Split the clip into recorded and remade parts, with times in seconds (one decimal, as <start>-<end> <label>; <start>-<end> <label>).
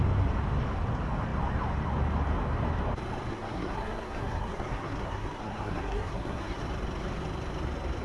0.0-3.3 recorded; 3.3-6.6 remade; 6.6-8.0 recorded